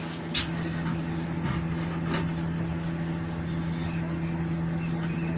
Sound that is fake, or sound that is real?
real